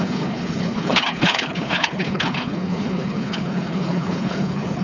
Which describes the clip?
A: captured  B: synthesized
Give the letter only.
B